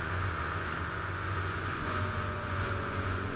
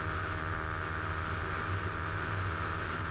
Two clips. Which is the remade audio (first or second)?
first